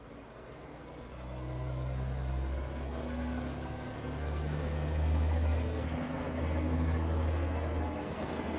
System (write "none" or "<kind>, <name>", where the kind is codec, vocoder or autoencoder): codec, SNAC